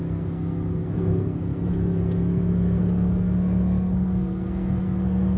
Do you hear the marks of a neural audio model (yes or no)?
yes